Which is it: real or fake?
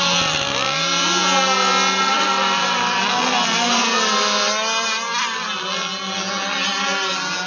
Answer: real